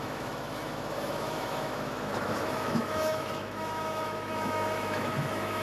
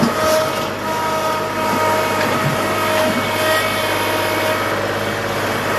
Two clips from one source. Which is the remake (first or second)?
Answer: first